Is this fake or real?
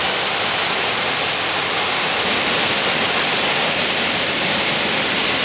real